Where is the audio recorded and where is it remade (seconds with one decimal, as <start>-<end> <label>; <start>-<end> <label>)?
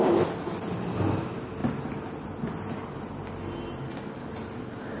0.0-5.0 recorded